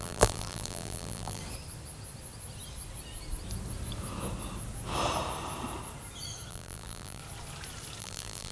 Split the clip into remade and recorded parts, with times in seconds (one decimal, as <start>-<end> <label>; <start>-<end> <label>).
0.0-1.4 remade; 1.4-6.5 recorded; 6.5-7.2 remade; 7.2-8.0 recorded; 8.0-8.5 remade